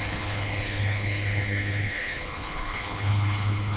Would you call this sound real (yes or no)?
no